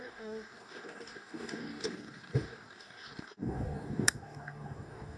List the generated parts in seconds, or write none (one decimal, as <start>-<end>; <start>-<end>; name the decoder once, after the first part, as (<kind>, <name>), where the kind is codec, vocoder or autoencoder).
0.0-5.2 (codec, DAC)